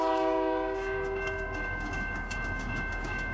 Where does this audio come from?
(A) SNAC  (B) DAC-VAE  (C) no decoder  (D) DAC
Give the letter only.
D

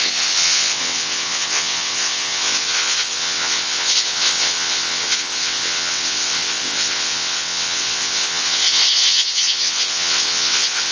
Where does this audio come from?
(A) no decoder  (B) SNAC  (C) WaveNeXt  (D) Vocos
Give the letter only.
C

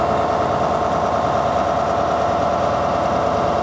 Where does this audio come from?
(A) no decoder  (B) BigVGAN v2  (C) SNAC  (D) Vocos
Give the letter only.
A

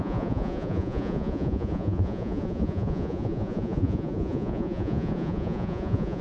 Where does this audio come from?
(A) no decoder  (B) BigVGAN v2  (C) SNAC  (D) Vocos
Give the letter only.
D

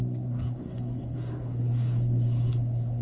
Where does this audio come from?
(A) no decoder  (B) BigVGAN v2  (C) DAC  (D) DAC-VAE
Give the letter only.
C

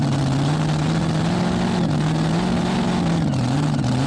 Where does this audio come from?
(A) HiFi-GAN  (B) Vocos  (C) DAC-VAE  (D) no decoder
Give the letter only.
D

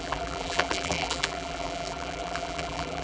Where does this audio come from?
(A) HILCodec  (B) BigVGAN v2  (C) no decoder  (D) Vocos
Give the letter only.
B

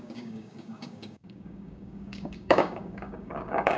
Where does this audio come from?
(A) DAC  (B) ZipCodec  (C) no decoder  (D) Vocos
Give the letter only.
A